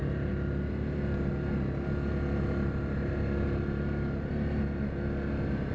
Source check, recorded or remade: recorded